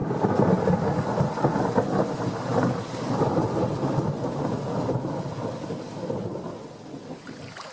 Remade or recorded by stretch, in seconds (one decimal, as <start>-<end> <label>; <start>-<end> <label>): 0.0-7.7 recorded